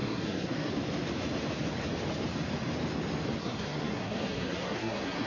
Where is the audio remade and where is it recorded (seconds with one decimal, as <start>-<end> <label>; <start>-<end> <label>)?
0.0-0.7 remade; 0.7-3.4 recorded; 3.4-5.3 remade